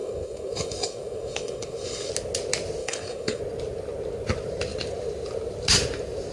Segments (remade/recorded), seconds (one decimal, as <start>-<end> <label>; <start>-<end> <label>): 0.0-2.1 remade; 2.1-2.8 recorded; 2.8-3.4 remade; 3.4-6.3 recorded